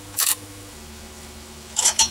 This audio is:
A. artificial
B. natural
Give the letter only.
A